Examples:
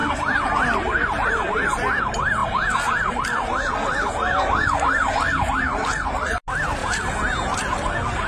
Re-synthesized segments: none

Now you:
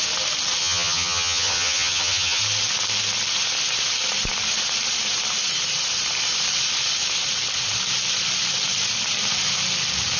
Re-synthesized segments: 0.6-2.4 (vocoder, HiFi-GAN)

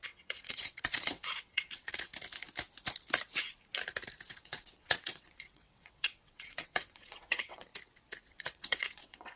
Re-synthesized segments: 0.0-2.1 (vocoder, WaveNeXt); 4.3-7.7; 8.3-9.4

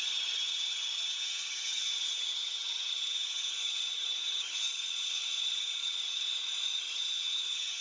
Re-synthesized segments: 0.0-6.3 (vocoder, HiFi-GAN); 6.9-7.8

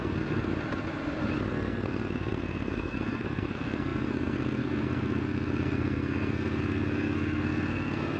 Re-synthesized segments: 0.0-0.5 (codec, SNAC); 1.5-8.2

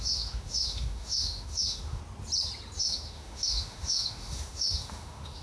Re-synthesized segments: 0.0-2.0 (autoencoder, DAC-VAE); 2.8-5.4